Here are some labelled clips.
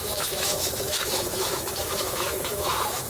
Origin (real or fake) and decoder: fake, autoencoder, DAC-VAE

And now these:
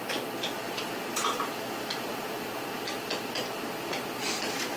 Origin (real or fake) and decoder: real